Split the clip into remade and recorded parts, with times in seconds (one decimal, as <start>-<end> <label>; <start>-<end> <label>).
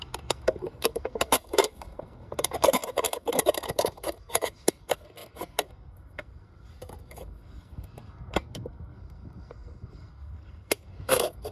0.0-11.5 remade